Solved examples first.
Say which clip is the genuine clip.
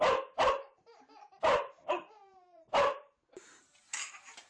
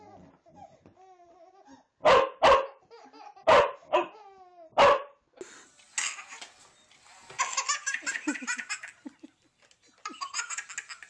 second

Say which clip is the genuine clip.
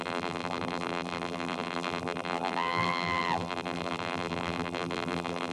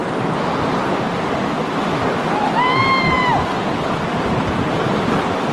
second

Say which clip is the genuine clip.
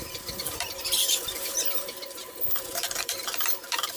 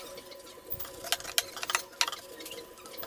second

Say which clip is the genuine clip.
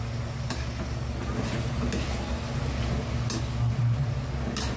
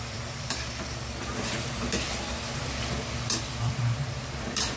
first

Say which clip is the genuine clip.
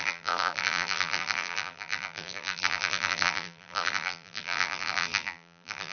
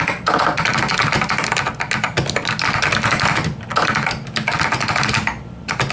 second